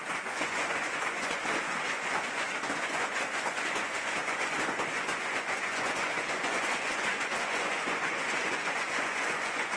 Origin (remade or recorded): remade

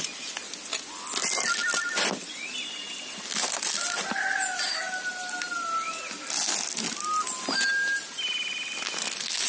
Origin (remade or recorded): recorded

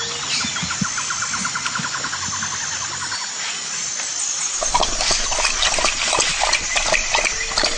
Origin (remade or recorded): recorded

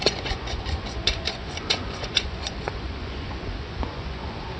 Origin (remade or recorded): remade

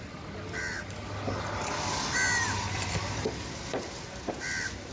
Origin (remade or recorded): recorded